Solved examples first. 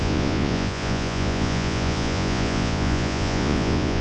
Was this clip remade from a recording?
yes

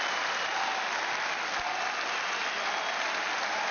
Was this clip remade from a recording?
no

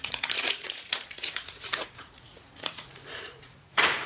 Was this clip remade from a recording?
yes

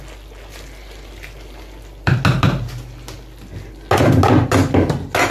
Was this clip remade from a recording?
no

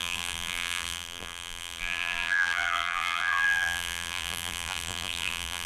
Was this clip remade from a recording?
yes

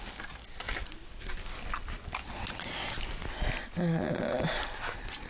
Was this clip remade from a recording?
no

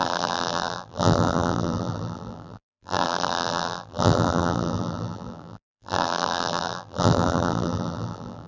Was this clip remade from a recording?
yes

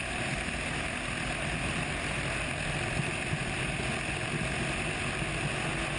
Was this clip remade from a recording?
no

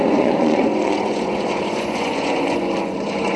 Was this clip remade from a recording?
yes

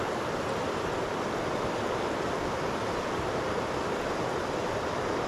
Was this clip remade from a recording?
no